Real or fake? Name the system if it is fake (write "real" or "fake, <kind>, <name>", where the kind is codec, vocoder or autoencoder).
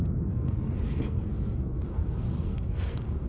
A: fake, codec, SNAC